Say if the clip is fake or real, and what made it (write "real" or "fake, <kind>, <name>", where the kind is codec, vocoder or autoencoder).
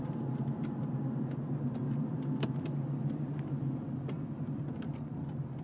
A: real